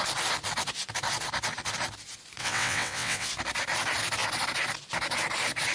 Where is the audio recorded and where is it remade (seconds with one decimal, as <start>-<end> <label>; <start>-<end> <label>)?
0.0-2.4 recorded; 2.4-3.3 remade; 3.3-5.7 recorded